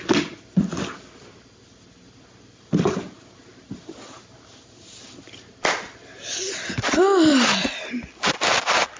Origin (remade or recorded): recorded